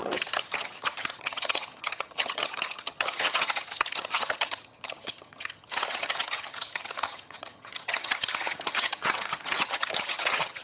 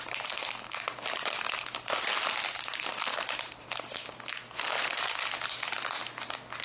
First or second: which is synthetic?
first